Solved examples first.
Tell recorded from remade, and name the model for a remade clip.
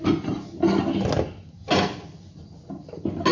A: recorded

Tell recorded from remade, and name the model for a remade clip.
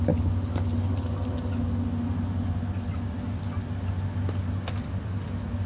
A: recorded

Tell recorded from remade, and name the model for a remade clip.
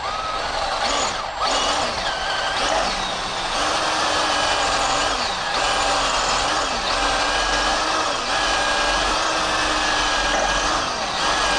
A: recorded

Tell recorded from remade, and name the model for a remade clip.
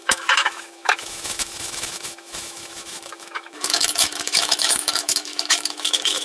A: remade, autoencoder, DAC-VAE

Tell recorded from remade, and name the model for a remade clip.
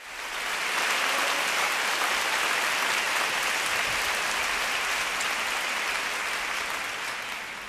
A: recorded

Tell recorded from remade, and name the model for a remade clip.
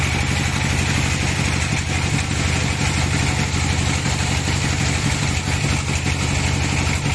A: recorded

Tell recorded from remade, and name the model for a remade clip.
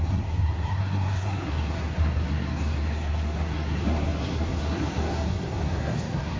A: remade, codec, SNAC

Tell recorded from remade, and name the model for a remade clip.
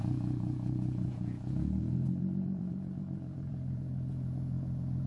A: remade, vocoder, Vocos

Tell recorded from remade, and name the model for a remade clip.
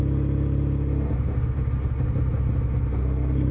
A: recorded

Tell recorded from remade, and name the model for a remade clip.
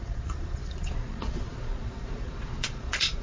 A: remade, vocoder, Vocos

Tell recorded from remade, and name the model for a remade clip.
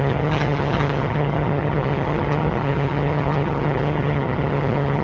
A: remade, vocoder, HiFi-GAN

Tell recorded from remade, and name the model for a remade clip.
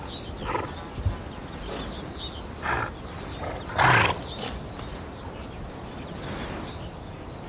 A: recorded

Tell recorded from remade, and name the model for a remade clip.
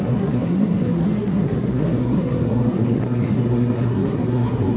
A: remade, codec, SNAC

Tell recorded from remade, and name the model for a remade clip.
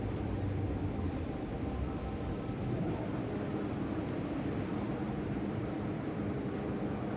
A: remade, vocoder, BigVGAN v2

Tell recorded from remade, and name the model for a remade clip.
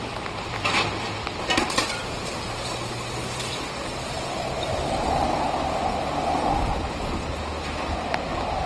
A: recorded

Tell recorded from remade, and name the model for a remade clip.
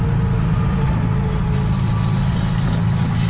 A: recorded